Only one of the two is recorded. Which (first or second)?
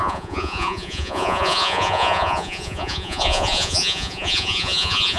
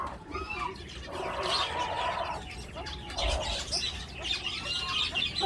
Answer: second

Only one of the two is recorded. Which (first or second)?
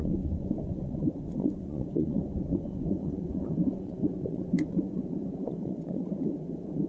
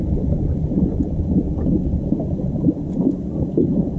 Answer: second